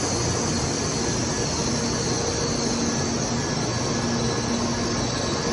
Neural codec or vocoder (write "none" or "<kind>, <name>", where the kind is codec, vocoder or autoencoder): none